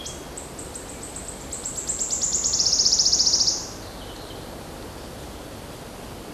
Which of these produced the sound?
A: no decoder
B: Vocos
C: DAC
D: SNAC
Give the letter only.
A